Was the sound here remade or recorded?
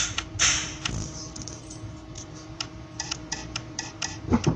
remade